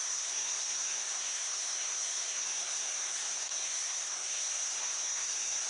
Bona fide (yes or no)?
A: no